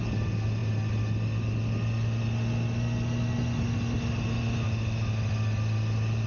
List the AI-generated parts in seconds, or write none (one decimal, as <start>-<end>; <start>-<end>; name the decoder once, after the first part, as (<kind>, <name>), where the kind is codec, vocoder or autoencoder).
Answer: none